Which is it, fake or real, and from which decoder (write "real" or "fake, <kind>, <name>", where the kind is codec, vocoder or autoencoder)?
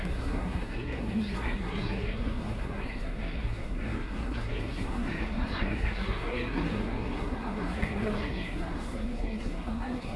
fake, codec, SNAC